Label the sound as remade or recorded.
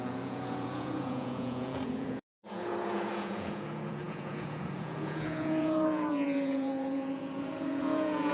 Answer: remade